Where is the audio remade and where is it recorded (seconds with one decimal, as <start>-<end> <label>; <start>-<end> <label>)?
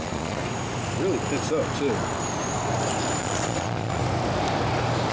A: 0.0-0.4 remade; 0.4-3.2 recorded; 3.2-4.0 remade; 4.0-5.1 recorded